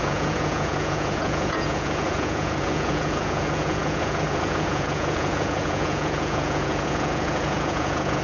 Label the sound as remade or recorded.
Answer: remade